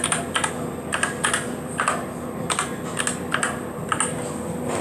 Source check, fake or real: real